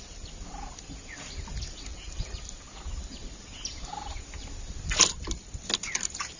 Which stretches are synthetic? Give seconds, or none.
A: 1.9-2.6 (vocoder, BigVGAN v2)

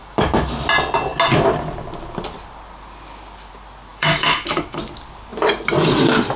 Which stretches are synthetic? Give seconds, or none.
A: 0.0-0.5 (autoencoder, DAC-VAE); 3.9-4.8

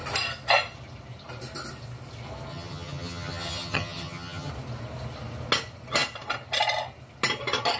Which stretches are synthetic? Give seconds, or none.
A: 2.5-4.5 (vocoder, HiFi-GAN)

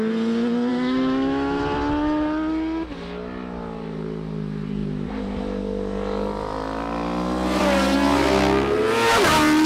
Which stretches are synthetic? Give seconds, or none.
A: 0.7-1.6 (autoencoder, DAC-VAE)

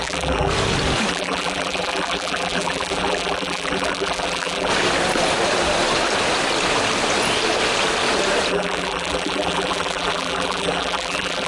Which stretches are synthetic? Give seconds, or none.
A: 0.0-0.5 (vocoder, BigVGAN v2); 1.1-4.7; 8.5-11.5